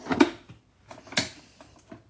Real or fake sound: real